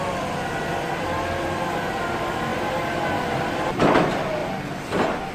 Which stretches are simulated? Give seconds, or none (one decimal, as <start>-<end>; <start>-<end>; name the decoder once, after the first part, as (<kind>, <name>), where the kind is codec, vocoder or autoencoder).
0.0-2.5 (vocoder, BigVGAN v2); 3.2-4.4